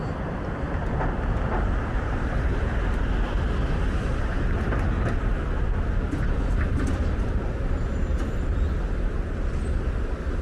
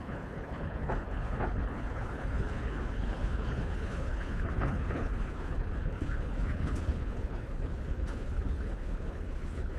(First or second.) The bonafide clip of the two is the first